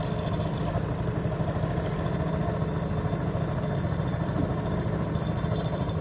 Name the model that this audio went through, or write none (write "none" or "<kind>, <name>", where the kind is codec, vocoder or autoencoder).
none